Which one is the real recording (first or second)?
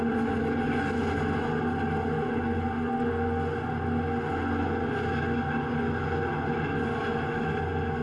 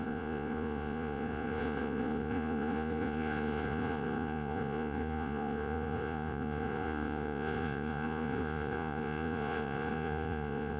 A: first